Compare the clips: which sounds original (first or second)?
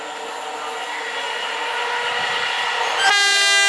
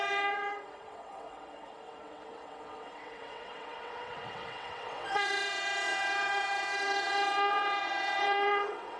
first